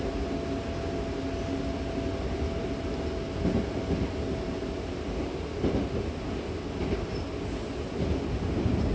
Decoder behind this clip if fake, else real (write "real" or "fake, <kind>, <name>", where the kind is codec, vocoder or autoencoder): real